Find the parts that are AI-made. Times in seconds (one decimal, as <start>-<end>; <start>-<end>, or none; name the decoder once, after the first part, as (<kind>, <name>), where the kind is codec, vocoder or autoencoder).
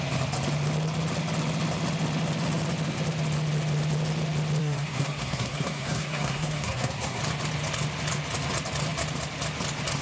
4.6-7.2 (codec, SNAC)